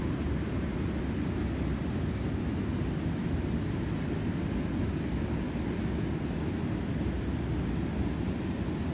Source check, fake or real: real